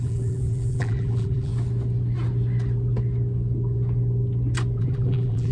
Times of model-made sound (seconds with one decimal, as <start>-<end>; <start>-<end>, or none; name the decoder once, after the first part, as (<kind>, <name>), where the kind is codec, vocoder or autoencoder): 0.0-1.5 (vocoder, BigVGAN v2); 4.8-5.5